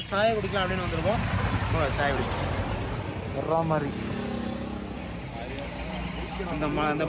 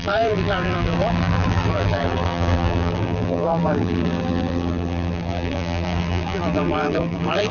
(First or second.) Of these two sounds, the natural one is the first